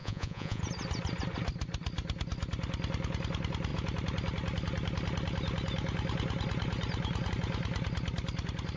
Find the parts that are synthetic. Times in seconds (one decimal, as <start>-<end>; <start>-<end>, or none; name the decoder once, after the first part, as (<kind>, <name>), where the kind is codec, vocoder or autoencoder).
0.0-0.6 (vocoder, Vocos)